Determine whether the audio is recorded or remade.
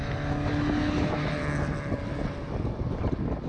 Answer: recorded